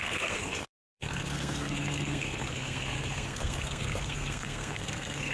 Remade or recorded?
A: remade